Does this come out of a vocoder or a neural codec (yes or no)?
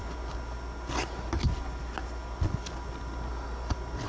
no